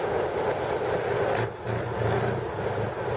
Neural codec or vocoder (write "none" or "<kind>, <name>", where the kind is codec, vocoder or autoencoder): none